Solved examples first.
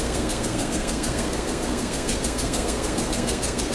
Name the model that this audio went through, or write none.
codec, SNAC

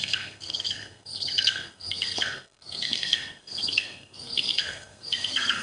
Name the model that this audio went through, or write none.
codec, SNAC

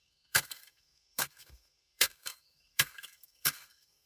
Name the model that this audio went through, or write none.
codec, SNAC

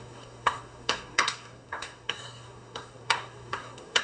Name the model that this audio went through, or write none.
codec, SNAC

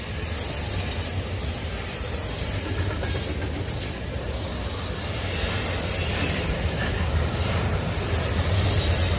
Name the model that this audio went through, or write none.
none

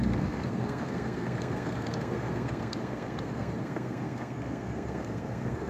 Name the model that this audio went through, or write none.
codec, SNAC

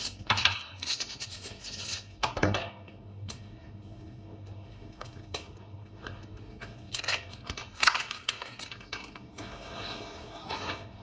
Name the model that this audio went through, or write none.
codec, SNAC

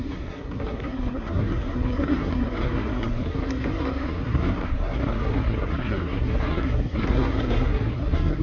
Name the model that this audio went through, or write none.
codec, SNAC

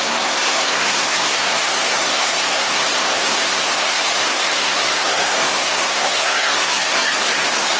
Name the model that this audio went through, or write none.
codec, SNAC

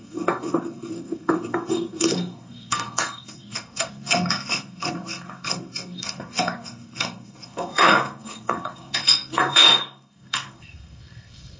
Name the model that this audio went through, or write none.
codec, SNAC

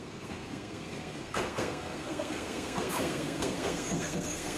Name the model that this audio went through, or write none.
codec, SNAC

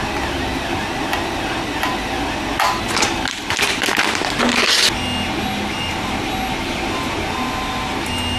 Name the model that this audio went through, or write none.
none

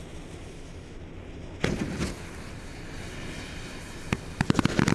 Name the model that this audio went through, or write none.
none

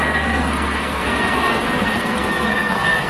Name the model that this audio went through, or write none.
codec, SNAC